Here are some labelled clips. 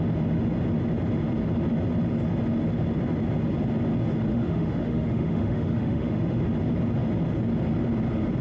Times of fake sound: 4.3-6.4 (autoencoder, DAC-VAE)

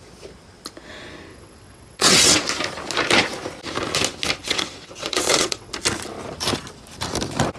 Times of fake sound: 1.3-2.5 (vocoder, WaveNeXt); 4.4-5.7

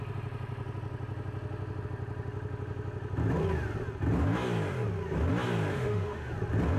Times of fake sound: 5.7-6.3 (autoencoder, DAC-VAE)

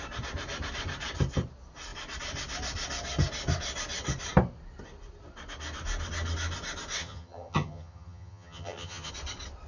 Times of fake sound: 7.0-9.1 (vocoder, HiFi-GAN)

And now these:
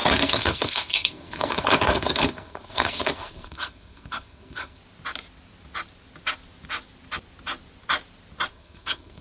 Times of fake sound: 0.0-4.8 (codec, SNAC); 8.5-9.2

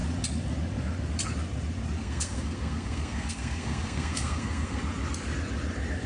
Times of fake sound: 2.0-4.8 (codec, SNAC)